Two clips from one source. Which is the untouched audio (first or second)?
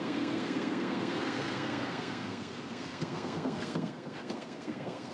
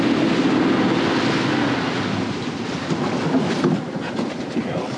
second